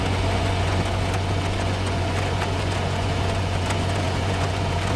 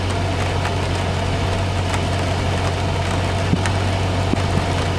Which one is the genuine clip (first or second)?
second